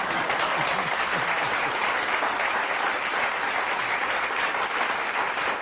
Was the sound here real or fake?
real